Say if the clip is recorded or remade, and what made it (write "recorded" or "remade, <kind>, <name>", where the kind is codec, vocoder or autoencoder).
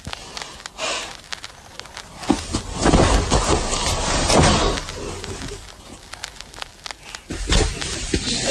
recorded